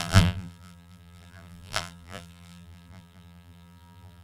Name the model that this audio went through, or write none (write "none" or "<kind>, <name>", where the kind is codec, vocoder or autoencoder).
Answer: vocoder, BigVGAN v2